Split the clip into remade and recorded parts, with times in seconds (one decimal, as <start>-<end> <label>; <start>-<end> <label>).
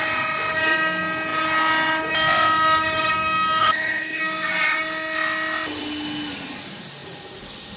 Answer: 0.0-3.6 recorded; 3.6-4.2 remade; 4.2-7.8 recorded